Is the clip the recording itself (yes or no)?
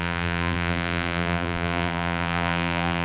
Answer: no